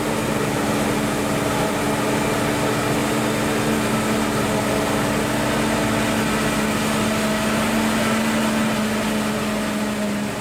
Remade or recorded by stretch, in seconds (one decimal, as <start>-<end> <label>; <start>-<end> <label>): 0.0-10.4 recorded